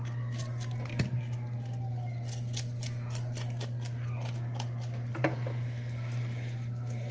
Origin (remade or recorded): recorded